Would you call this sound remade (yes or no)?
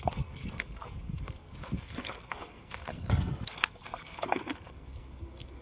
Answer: yes